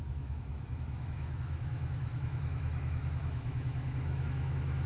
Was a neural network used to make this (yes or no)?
yes